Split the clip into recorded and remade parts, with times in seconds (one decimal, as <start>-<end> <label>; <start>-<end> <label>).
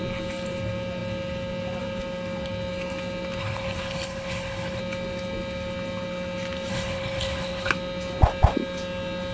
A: 0.0-3.4 recorded; 3.4-4.8 remade; 4.8-6.7 recorded; 6.7-7.7 remade; 7.7-9.3 recorded